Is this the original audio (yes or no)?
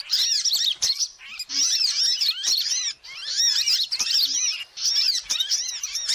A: no